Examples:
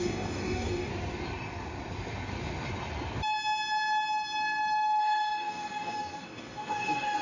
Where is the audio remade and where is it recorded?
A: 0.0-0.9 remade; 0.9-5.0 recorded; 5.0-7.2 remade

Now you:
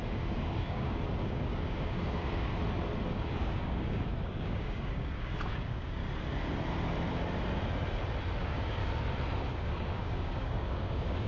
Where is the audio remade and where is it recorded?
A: 0.0-2.5 remade; 2.5-3.1 recorded; 3.1-6.0 remade; 6.0-8.4 recorded; 8.4-8.8 remade; 8.8-9.5 recorded; 9.5-11.3 remade

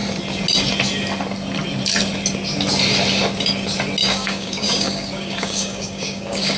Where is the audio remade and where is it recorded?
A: 0.0-4.0 recorded; 4.0-6.6 remade

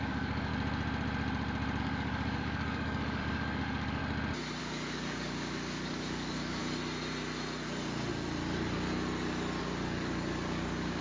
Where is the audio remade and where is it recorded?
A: 0.0-0.5 remade; 0.5-1.8 recorded; 1.8-4.0 remade; 4.0-4.6 recorded; 4.6-6.6 remade; 6.6-9.6 recorded; 9.6-11.0 remade

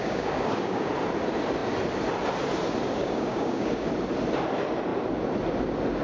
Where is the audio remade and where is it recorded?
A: 0.0-0.9 remade; 0.9-3.0 recorded; 3.0-3.9 remade; 3.9-6.0 recorded

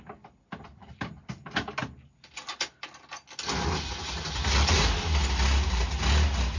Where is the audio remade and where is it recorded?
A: 0.0-6.6 recorded